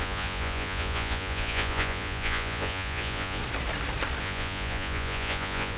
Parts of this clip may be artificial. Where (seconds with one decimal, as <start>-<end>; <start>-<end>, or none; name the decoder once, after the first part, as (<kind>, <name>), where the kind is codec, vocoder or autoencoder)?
0.0-3.4 (vocoder, Vocos); 4.2-5.8